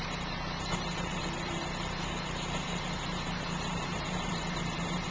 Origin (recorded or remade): remade